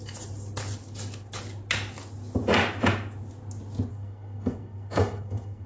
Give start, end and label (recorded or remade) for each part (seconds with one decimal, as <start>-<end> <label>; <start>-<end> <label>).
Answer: 0.0-3.9 recorded; 3.9-5.7 remade